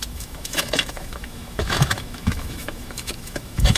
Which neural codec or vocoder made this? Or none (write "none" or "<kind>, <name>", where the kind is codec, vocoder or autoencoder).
autoencoder, DAC-VAE